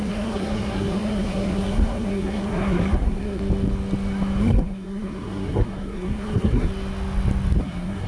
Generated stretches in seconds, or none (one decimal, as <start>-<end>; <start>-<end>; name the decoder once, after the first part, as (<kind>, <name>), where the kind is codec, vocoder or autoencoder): 0.0-3.4 (codec, SNAC); 4.4-6.7; 7.6-8.1